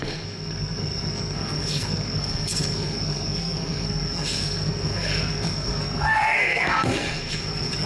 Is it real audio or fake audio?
fake